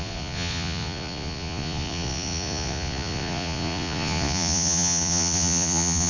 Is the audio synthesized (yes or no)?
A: yes